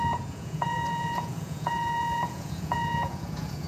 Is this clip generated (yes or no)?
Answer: yes